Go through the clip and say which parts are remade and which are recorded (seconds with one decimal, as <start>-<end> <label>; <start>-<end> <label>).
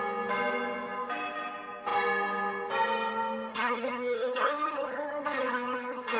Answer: 0.0-3.5 recorded; 3.5-6.2 remade